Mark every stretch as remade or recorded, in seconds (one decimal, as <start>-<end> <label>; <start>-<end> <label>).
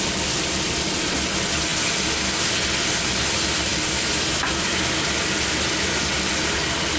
0.0-7.0 recorded